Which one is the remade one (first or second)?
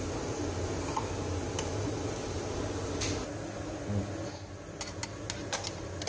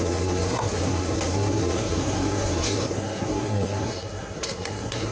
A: second